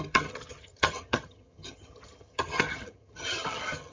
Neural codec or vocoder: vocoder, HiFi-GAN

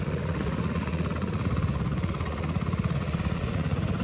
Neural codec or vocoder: vocoder, Vocos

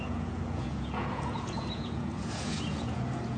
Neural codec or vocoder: vocoder, Vocos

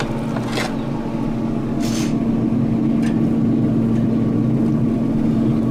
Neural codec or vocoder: none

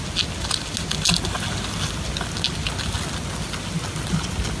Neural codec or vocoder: none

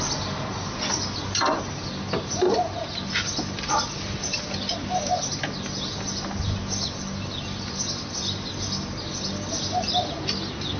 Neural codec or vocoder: none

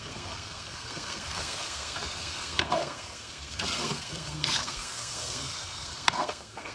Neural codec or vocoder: codec, SNAC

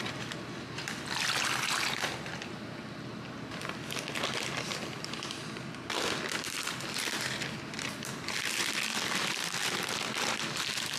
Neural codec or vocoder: none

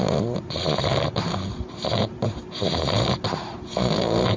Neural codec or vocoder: vocoder, BigVGAN v2